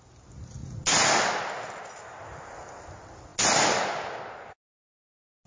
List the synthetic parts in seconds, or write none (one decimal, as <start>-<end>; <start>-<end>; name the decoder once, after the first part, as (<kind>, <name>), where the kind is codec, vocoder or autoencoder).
none